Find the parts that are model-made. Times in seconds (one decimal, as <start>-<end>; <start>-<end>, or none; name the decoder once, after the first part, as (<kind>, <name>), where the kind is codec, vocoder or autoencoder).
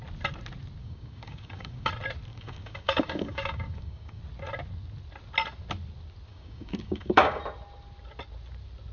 0.8-1.9 (codec, DAC); 2.3-4.2; 6.3-7.4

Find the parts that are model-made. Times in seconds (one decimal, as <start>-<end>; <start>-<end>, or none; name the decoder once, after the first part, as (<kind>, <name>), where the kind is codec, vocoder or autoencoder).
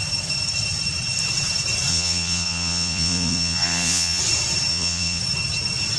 1.9-4.2 (vocoder, Vocos); 4.7-5.2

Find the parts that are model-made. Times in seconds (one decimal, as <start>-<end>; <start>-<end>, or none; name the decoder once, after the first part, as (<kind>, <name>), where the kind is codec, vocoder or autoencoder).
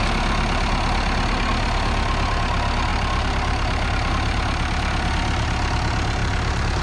2.9-4.1 (vocoder, BigVGAN v2); 6.2-6.8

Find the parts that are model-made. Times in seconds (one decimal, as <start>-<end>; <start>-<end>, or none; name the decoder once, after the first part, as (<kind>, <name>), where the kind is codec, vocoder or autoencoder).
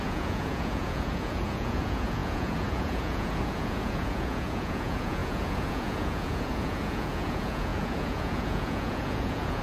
0.0-9.6 (vocoder, Vocos)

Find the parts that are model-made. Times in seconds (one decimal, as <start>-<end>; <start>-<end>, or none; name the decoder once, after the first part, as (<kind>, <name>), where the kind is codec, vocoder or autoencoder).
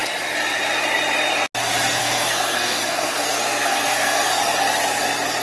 2.0-4.4 (codec, SNAC)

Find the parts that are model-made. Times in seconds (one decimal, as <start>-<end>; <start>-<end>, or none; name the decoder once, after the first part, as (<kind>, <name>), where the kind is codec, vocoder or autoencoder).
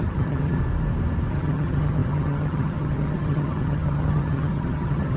0.0-0.6 (vocoder, HiFi-GAN); 1.3-5.2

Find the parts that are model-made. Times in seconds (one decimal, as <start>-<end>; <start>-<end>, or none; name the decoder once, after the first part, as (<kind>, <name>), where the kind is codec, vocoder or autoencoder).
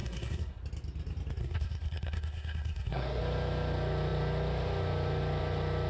0.0-0.6 (codec, SNAC); 1.4-3.2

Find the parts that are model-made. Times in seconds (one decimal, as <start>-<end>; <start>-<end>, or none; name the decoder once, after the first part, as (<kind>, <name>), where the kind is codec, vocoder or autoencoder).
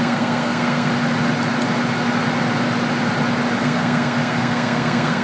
0.0-0.9 (codec, SNAC); 3.6-5.2